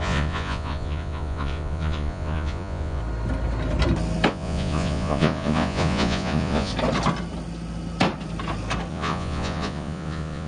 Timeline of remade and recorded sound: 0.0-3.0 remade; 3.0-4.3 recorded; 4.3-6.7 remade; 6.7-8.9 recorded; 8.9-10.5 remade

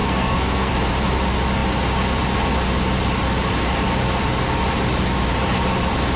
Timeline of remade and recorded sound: 0.0-0.7 remade; 0.7-6.2 recorded

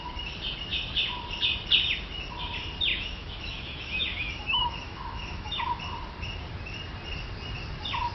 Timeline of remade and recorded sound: 0.0-2.9 recorded; 2.9-5.8 remade; 5.8-8.1 recorded